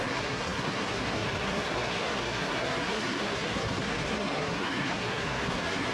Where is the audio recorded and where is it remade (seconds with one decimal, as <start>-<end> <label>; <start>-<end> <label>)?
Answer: 0.0-5.9 remade